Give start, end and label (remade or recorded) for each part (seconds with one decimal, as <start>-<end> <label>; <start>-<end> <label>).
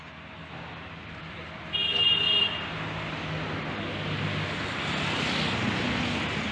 0.0-6.5 recorded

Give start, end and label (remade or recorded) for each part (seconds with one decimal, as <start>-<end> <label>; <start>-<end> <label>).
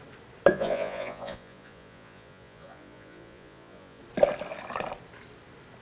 0.0-0.5 recorded; 0.5-4.0 remade; 4.0-5.8 recorded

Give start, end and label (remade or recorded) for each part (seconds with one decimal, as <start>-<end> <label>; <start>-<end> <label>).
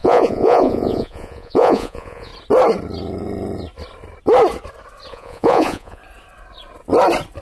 0.0-2.3 remade; 2.3-5.1 recorded; 5.1-6.0 remade; 6.0-7.4 recorded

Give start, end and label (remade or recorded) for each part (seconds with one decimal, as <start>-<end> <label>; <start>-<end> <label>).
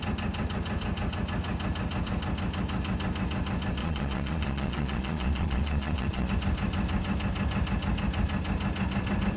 0.0-3.8 recorded; 3.8-6.3 remade; 6.3-9.4 recorded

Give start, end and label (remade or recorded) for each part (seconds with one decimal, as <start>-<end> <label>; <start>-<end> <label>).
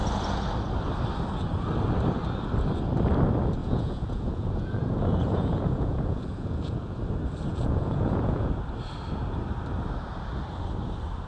0.0-3.6 recorded; 3.6-7.0 remade; 7.0-7.5 recorded; 7.5-8.5 remade; 8.5-11.3 recorded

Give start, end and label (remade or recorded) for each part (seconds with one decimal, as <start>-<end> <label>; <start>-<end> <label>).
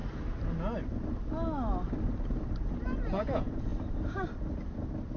0.0-3.1 recorded; 3.1-3.7 remade; 3.7-5.2 recorded